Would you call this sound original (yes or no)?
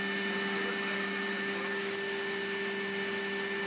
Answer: yes